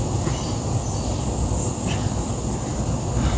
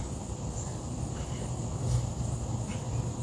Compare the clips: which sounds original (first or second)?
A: first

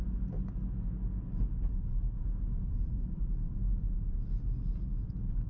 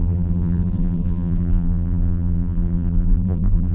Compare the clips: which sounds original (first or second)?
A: first